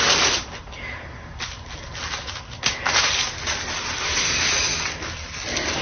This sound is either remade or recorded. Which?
recorded